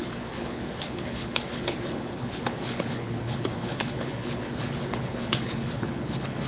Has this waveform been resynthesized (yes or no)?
yes